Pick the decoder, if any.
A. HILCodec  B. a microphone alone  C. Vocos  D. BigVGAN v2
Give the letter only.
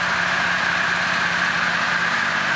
B